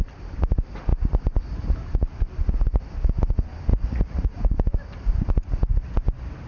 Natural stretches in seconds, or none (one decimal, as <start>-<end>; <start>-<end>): 0.0-3.7; 4.4-6.5

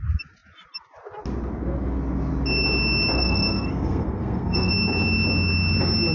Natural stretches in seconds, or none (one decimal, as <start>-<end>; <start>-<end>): 0.0-3.1; 4.7-6.1

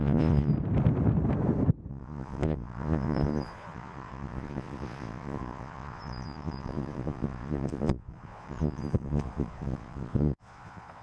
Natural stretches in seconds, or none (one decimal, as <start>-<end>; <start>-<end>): 0.5-1.9